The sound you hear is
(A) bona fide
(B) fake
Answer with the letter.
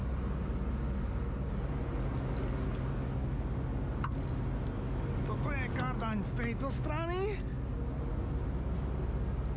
A